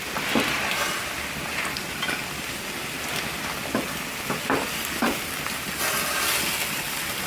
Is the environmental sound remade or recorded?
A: recorded